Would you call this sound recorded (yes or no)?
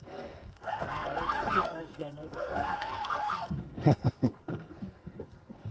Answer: no